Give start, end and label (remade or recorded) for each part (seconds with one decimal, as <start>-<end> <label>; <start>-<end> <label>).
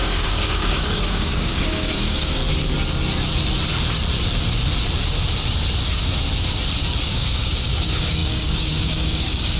0.0-2.4 remade; 2.4-7.1 recorded; 7.1-9.6 remade